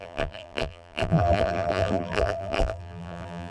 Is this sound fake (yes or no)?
yes